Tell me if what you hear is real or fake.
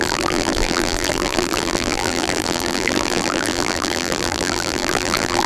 fake